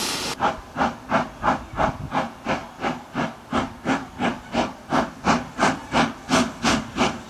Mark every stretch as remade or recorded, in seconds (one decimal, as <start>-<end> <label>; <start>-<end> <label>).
0.0-7.3 recorded